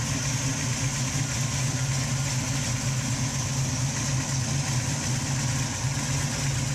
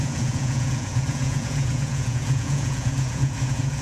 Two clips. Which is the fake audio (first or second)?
second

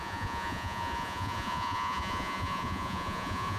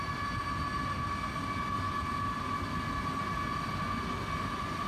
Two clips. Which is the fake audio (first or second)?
first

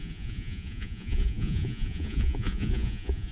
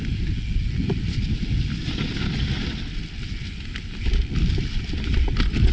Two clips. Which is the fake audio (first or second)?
first